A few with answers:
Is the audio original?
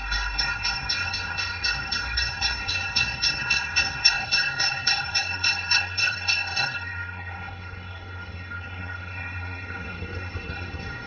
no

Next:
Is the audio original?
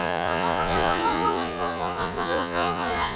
no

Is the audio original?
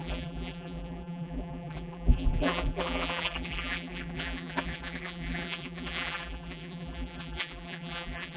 no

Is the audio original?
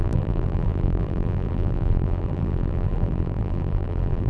no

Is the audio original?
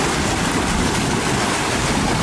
yes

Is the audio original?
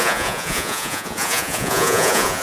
no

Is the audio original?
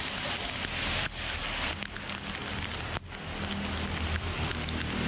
yes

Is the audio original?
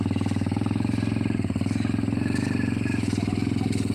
yes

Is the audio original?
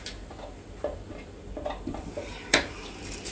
yes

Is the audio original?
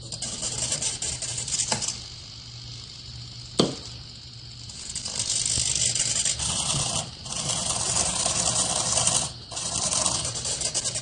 yes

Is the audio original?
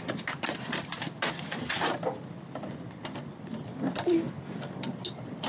yes